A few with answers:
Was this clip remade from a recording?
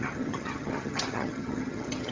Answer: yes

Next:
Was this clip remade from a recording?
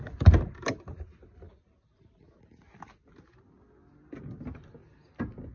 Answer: no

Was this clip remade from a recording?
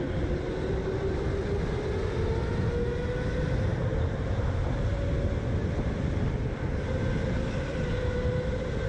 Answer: no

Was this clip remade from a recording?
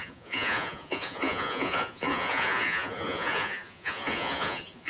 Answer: yes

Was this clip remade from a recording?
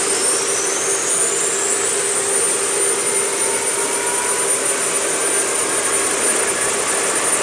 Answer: no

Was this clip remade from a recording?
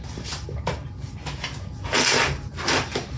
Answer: yes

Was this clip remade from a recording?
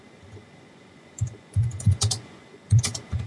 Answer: yes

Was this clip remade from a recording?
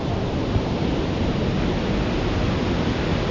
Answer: no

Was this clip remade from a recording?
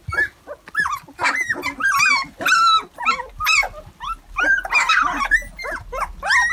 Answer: no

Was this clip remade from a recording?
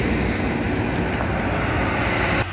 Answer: no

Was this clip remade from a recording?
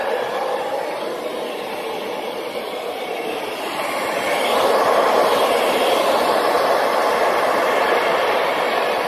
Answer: yes